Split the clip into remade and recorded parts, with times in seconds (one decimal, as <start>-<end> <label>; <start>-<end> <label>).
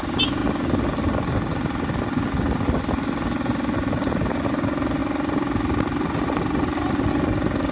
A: 0.0-7.7 recorded